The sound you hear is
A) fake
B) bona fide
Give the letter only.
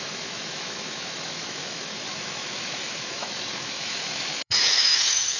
A